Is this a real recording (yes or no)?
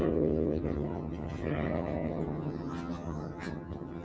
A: no